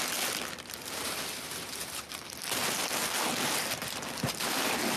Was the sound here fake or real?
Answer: real